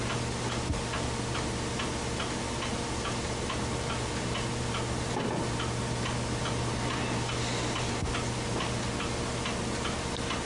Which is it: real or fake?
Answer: real